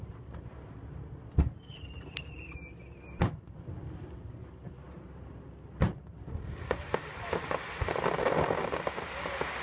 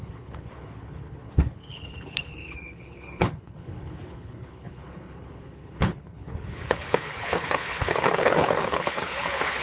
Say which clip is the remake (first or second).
second